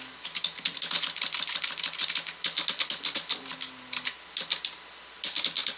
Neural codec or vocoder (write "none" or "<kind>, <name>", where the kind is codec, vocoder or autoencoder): none